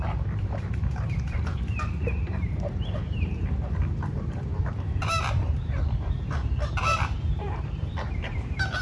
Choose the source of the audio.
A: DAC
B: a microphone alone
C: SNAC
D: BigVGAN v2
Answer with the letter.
D